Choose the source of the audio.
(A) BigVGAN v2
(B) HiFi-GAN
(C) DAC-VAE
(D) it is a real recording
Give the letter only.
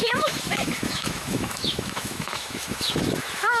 C